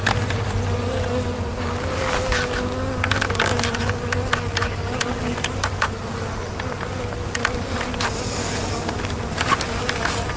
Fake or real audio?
real